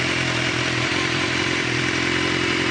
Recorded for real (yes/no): no